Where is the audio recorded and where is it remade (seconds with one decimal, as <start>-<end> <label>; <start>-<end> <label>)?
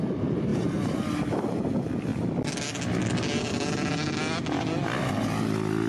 0.0-5.9 recorded